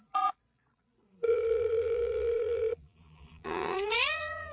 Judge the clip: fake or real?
fake